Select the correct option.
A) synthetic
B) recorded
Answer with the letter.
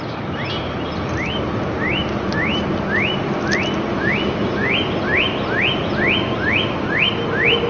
B